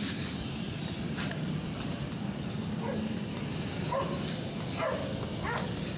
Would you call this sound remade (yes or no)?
no